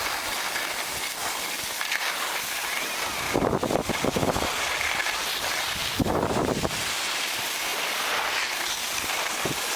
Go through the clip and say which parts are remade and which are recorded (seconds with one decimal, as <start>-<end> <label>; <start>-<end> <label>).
0.0-9.8 recorded